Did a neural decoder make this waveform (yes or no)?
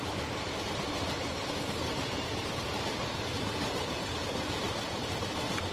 yes